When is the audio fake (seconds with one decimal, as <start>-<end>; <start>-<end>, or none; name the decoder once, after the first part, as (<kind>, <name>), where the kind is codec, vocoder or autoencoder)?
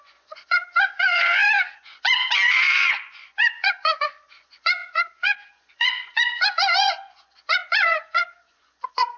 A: 0.0-9.2 (vocoder, Vocos)